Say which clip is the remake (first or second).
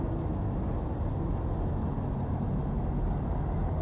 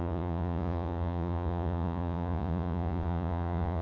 second